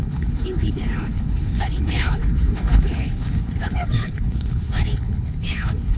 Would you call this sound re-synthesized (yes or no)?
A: yes